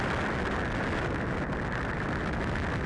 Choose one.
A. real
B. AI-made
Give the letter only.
A